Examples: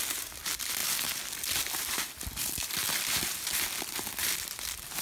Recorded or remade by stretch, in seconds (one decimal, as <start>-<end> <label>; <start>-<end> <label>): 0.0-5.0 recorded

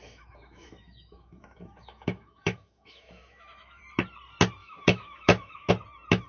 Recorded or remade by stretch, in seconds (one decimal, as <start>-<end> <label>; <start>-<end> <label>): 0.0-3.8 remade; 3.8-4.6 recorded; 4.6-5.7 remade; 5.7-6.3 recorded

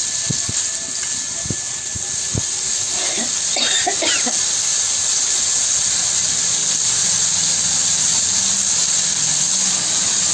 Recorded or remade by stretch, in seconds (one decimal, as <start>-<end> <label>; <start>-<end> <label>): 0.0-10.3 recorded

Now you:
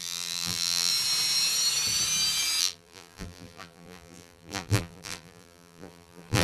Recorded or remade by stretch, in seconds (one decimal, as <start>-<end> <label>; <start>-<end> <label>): 0.0-0.9 remade; 0.9-2.6 recorded; 2.6-6.4 remade

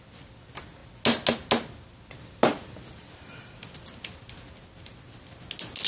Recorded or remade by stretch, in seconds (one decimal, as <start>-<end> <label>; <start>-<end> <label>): 0.0-5.9 recorded

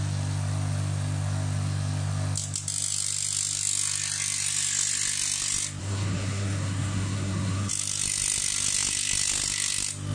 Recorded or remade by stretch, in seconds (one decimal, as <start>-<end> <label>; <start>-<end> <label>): 0.0-5.8 recorded; 5.8-7.7 remade; 7.7-10.1 recorded

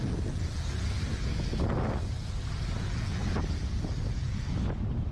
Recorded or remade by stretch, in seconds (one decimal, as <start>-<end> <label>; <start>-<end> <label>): 0.0-0.9 recorded; 0.9-2.8 remade; 2.8-3.2 recorded; 3.2-5.1 remade